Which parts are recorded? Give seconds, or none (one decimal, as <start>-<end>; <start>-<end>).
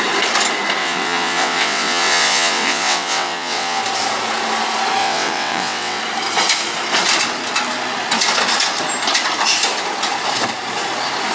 0.0-0.8; 3.8-5.0; 6.0-11.3